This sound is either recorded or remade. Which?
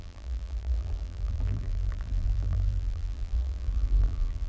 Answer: remade